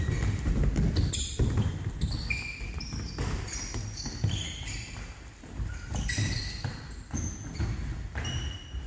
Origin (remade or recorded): recorded